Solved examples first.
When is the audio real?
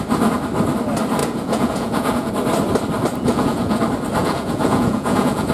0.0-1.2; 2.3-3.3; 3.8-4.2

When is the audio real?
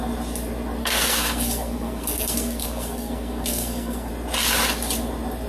0.0-0.8; 4.1-5.5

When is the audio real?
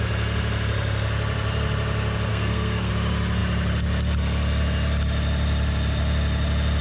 0.0-2.3; 2.9-6.8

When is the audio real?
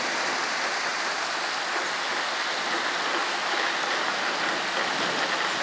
0.0-3.2; 3.7-5.6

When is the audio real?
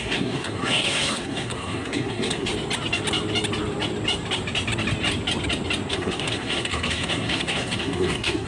2.5-5.9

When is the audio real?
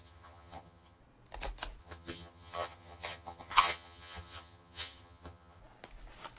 1.0-1.8; 5.6-6.4